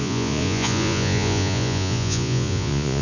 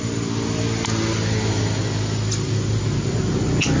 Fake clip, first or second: first